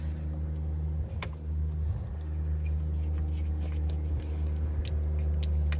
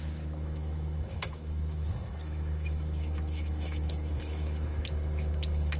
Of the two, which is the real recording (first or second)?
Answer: first